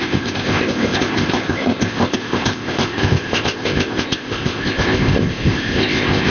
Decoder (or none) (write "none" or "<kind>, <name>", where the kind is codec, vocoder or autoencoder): codec, ZipCodec